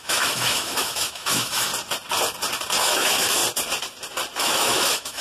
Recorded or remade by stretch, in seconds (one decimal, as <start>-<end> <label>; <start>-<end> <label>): 0.0-1.7 remade; 1.7-2.8 recorded; 2.8-3.4 remade; 3.4-4.4 recorded; 4.4-5.2 remade